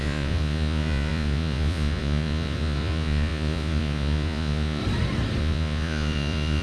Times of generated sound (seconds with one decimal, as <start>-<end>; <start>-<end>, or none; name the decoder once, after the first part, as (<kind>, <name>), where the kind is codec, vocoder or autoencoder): 0.0-4.8 (vocoder, Vocos); 5.4-6.6